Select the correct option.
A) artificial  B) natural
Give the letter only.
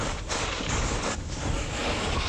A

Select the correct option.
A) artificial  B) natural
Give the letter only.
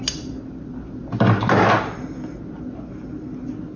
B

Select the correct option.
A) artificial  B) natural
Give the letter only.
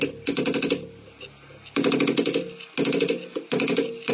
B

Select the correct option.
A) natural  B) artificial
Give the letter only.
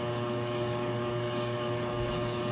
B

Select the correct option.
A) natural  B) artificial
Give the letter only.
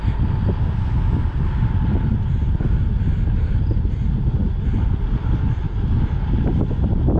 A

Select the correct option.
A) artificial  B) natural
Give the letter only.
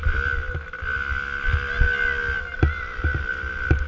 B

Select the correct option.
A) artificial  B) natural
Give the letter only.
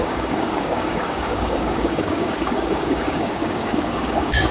A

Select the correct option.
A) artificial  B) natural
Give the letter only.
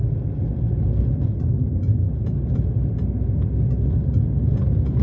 B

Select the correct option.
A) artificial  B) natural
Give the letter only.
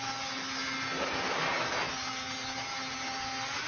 B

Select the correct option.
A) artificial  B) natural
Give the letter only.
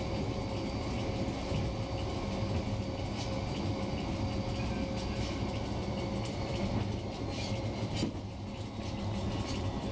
B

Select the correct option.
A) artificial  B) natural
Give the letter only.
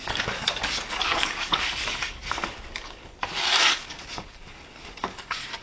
A